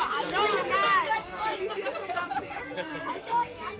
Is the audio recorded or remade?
remade